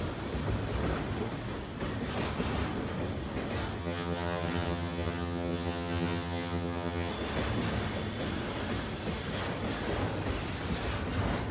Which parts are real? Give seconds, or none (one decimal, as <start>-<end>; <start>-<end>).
0.0-3.8; 7.1-11.5